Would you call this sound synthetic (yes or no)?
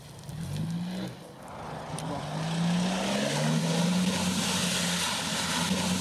no